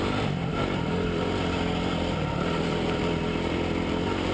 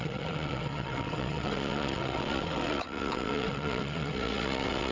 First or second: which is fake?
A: second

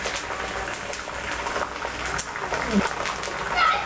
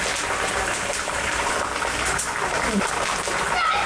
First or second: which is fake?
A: second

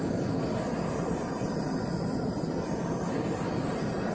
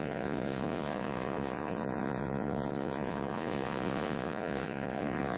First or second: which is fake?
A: second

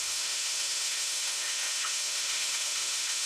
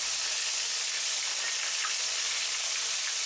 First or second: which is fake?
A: first